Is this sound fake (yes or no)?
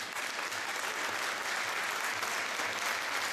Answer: no